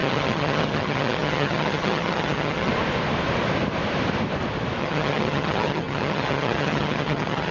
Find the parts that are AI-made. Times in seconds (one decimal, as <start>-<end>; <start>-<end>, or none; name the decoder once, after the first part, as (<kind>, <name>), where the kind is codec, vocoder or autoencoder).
0.0-2.7 (vocoder, HiFi-GAN); 4.8-7.5